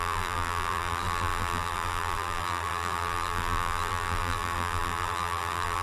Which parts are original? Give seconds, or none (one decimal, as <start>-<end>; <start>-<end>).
none